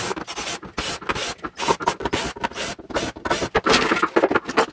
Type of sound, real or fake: real